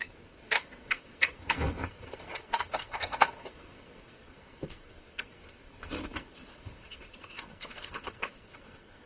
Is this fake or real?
fake